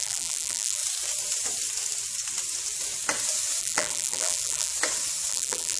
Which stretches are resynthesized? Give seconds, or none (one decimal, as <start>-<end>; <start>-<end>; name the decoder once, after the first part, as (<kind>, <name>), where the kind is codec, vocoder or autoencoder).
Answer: 0.0-0.8 (vocoder, BigVGAN v2); 3.6-4.7; 5.3-5.8